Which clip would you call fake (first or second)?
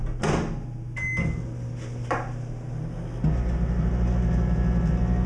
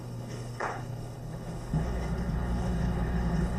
second